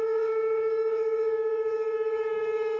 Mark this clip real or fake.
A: fake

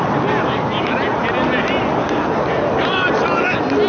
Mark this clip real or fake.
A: real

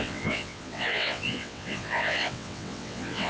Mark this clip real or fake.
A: fake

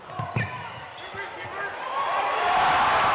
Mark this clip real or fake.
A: real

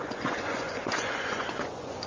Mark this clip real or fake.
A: fake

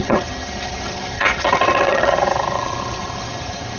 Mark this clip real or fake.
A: fake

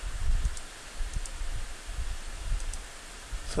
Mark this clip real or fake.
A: real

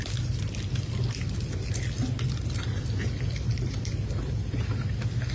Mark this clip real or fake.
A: real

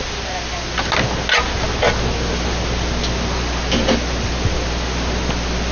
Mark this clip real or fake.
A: real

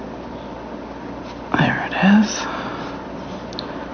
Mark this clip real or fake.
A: real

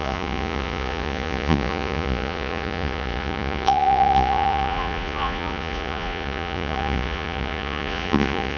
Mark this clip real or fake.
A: fake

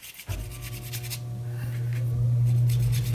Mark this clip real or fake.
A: real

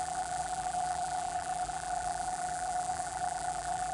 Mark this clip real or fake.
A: fake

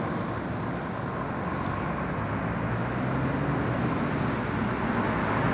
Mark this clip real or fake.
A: real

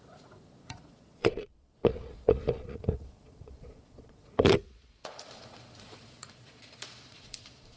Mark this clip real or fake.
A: fake